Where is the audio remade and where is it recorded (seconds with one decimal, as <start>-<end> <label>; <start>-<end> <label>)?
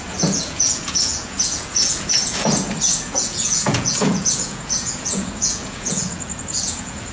0.0-7.1 remade